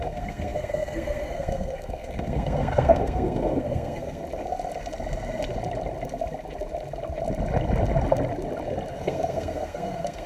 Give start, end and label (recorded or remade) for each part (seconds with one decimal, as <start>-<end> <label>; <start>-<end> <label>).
0.0-4.2 remade; 4.2-8.9 recorded; 8.9-10.3 remade